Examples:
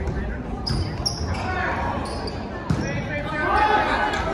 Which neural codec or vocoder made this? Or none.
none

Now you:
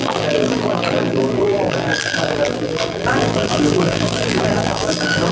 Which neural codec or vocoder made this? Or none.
vocoder, BigVGAN v2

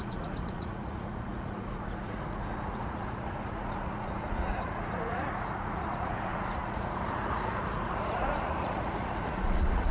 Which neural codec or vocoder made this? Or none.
vocoder, Vocos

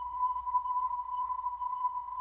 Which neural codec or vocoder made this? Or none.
codec, SNAC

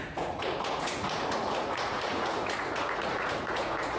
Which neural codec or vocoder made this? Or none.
vocoder, Vocos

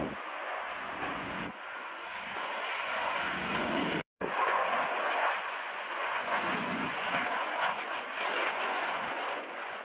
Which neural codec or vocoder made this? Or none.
vocoder, Vocos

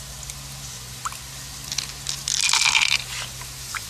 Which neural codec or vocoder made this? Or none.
none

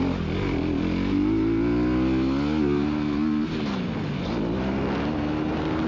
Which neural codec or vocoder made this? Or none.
none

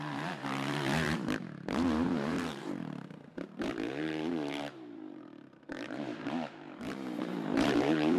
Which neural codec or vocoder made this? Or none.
vocoder, BigVGAN v2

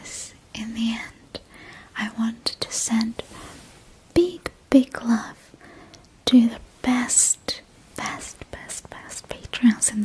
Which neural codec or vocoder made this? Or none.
none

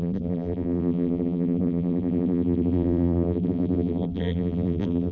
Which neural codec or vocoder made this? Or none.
vocoder, BigVGAN v2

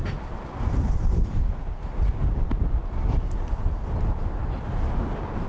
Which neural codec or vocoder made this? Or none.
none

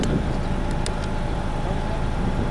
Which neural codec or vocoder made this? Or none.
none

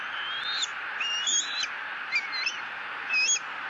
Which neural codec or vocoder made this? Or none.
none